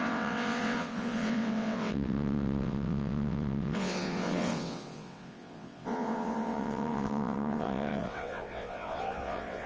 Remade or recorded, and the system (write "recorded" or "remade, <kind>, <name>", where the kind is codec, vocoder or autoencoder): remade, vocoder, WaveNeXt